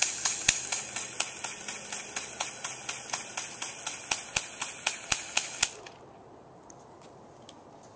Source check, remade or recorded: recorded